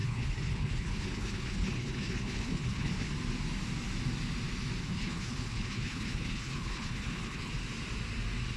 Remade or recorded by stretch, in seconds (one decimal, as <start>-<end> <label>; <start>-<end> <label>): 0.0-3.1 remade; 3.1-4.8 recorded; 4.8-7.5 remade; 7.5-8.6 recorded